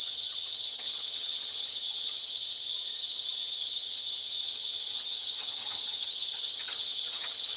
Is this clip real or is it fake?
fake